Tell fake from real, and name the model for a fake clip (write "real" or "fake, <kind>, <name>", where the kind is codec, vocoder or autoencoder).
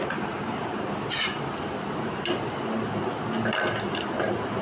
real